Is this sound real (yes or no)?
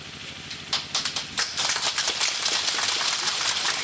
yes